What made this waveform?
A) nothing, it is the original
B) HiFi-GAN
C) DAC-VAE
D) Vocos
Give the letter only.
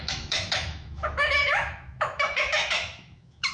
C